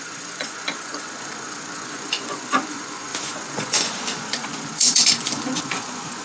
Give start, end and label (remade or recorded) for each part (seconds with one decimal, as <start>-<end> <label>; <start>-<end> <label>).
0.0-6.2 remade